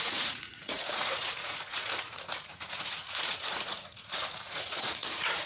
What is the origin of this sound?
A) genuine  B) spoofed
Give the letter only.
B